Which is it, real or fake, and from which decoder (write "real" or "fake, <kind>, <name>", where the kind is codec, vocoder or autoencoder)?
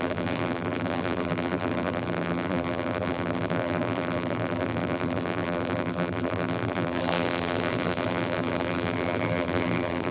fake, vocoder, BigVGAN v2